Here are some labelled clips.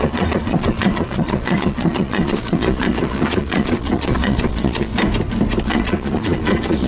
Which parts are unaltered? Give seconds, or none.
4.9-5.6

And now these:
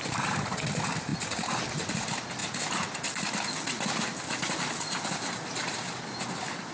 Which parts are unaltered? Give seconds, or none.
0.0-6.7

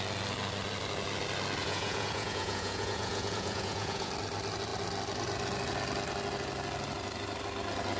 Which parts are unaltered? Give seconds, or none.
0.0-1.6; 4.1-8.0

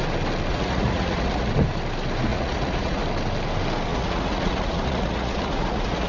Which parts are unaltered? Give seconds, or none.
0.0-0.5; 1.5-2.3; 3.0-3.9

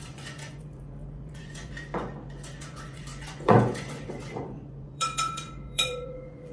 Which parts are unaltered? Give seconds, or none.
none

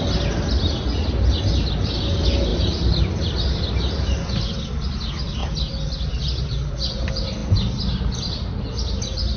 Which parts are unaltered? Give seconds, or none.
0.0-9.4

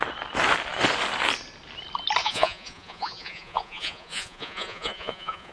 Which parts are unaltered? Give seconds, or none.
0.0-2.2